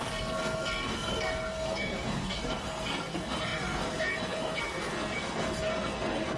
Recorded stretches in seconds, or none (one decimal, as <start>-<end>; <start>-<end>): none